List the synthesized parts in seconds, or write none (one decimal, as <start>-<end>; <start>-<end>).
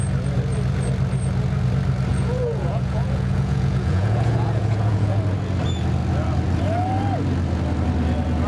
2.1-5.2